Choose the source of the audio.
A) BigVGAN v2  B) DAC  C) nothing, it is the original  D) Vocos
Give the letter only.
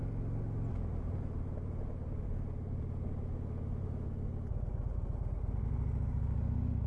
C